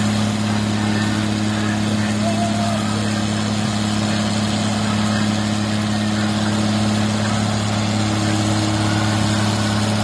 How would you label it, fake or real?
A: real